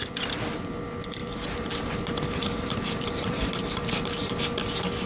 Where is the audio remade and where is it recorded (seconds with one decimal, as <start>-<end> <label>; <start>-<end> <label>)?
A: 0.0-1.2 recorded; 1.2-4.3 remade; 4.3-5.1 recorded